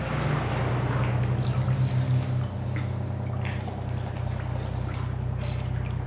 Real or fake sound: real